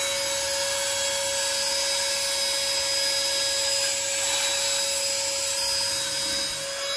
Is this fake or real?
real